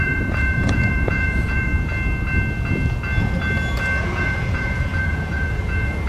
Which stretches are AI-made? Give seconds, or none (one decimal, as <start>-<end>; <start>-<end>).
0.0-1.7; 4.0-6.1